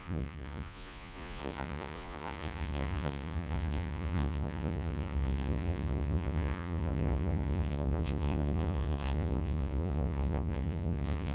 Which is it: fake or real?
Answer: fake